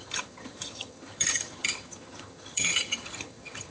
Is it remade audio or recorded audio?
remade